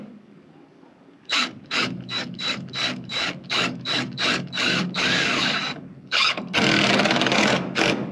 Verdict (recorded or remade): remade